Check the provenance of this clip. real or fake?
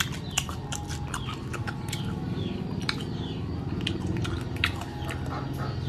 real